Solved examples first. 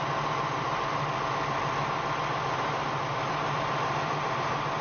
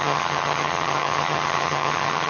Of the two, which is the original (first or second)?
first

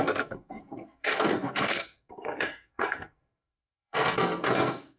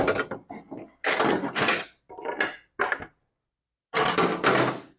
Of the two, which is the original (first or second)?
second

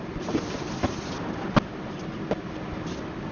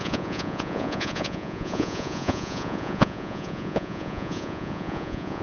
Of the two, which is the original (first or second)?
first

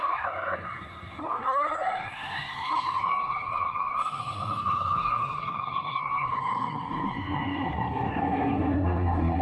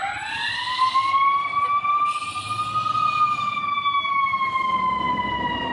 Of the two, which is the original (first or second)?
second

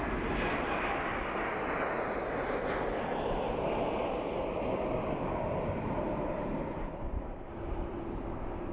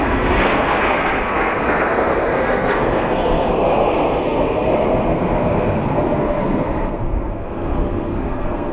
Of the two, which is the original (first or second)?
first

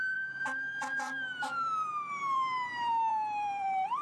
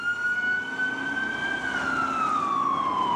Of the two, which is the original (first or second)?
second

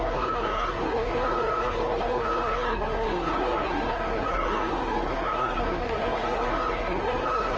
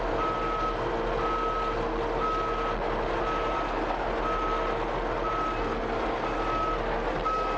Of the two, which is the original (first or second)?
second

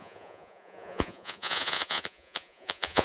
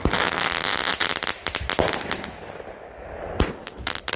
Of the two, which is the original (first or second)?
second